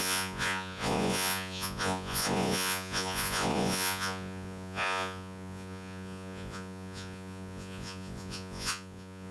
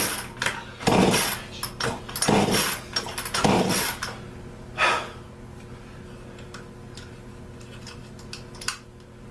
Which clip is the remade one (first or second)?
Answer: first